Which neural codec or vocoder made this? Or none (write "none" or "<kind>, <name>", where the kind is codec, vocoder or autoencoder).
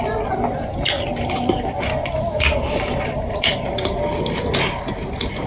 none